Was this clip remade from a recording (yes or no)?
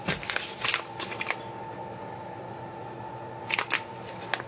no